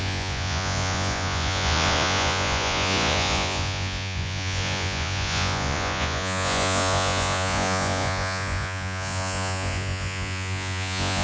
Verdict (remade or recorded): remade